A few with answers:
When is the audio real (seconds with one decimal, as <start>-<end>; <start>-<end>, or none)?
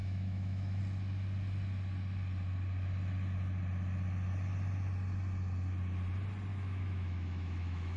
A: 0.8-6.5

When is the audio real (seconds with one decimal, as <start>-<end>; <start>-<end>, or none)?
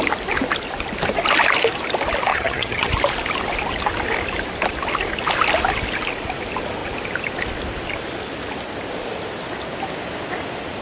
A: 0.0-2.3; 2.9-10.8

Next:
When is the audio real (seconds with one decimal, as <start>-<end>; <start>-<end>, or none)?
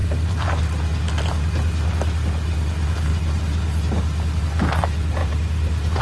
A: 0.6-5.2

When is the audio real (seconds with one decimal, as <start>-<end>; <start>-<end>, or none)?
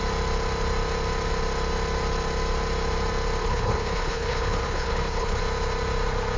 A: 0.0-3.4; 5.4-6.4